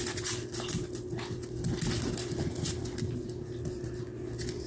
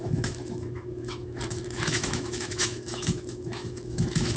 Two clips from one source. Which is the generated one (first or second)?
second